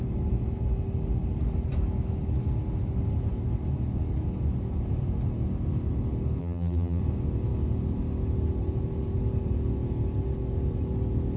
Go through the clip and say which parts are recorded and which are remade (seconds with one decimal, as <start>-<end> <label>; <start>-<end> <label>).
0.0-6.4 recorded; 6.4-7.0 remade; 7.0-11.4 recorded